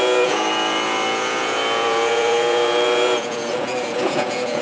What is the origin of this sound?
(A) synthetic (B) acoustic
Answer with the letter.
A